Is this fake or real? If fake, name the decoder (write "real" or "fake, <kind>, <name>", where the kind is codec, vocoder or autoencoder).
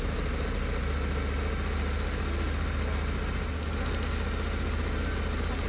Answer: real